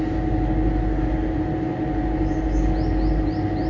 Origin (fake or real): real